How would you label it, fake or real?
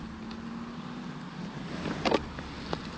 real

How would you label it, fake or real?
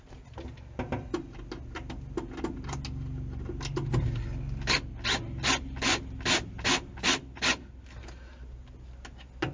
real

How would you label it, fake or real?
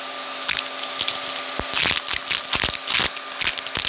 real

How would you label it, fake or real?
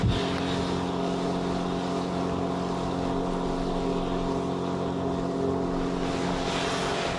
real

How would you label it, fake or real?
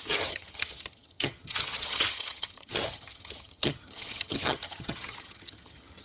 fake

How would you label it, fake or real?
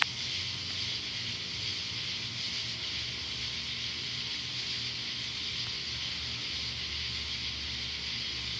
real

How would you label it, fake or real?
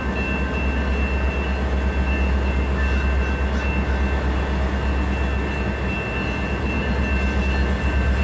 real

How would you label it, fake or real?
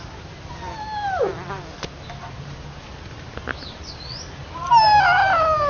real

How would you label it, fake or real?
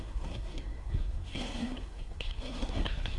fake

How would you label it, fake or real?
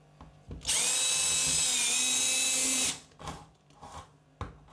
real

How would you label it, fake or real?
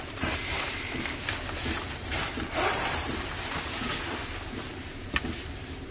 fake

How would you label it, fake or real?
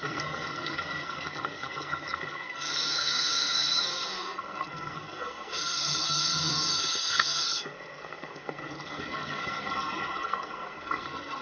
fake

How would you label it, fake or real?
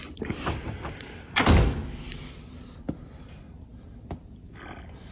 real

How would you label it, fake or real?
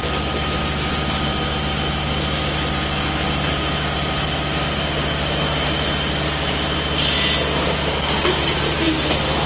real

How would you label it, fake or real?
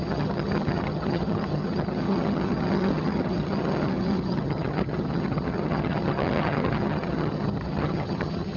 fake